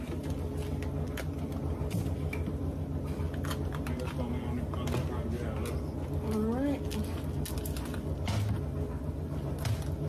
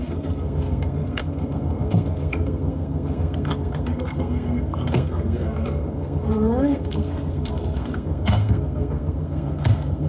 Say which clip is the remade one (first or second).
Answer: second